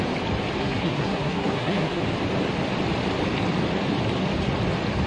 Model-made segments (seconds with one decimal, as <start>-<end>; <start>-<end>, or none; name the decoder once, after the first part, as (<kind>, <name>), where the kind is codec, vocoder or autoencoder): 0.6-2.0 (codec, SNAC)